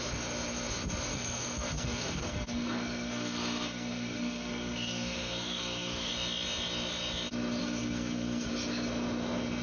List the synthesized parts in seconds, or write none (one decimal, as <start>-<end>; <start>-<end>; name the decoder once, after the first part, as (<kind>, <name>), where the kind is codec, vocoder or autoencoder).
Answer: 1.1-6.1 (codec, SNAC); 7.6-8.5